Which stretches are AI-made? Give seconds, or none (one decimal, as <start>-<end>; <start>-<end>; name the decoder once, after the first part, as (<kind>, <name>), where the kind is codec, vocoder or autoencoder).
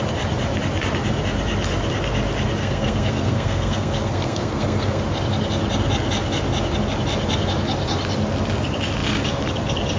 2.6-5.0 (codec, SNAC)